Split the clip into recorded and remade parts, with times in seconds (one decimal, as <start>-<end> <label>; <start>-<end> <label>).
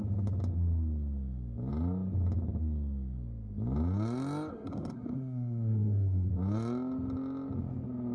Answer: 0.0-4.5 recorded; 4.5-6.3 remade; 6.3-8.1 recorded